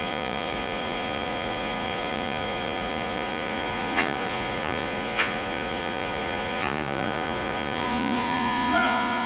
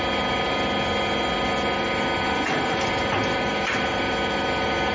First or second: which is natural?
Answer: second